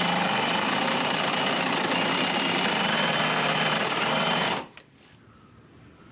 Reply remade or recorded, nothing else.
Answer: remade